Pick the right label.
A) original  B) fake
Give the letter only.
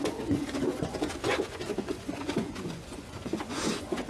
B